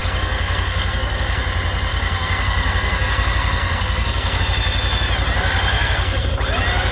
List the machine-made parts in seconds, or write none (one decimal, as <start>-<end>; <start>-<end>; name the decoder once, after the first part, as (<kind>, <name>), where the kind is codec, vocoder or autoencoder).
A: 0.0-1.4 (codec, SNAC); 1.9-4.4; 5.7-6.3